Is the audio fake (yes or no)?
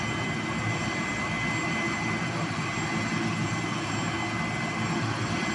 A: no